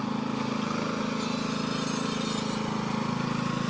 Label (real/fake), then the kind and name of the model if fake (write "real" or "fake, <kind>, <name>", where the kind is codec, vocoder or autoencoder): real